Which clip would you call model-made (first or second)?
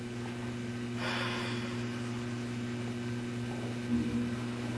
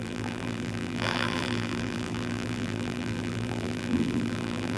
second